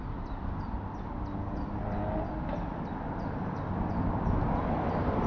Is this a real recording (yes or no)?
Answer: yes